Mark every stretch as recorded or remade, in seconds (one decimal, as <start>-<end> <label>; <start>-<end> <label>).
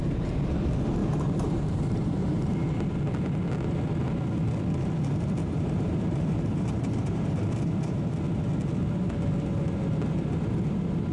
0.0-1.0 recorded; 1.0-2.5 remade; 2.5-5.4 recorded; 5.4-8.1 remade; 8.1-11.1 recorded